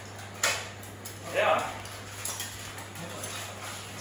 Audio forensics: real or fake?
real